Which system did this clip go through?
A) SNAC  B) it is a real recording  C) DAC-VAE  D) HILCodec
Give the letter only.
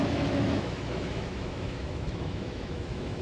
C